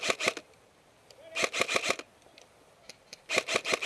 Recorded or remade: recorded